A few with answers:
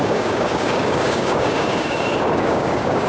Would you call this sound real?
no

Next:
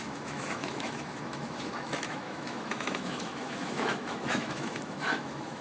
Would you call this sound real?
no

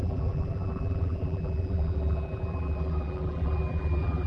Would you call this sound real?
no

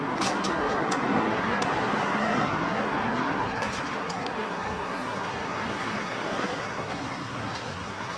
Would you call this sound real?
no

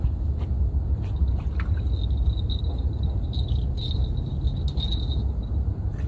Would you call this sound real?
yes